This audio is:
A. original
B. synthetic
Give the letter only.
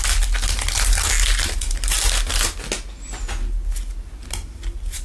A